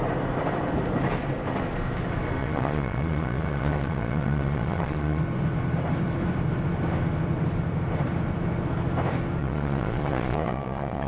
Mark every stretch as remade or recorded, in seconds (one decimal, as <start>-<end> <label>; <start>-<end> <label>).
0.0-2.4 recorded; 2.4-5.2 remade; 5.2-9.4 recorded; 9.4-11.1 remade